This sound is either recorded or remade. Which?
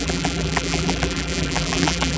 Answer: remade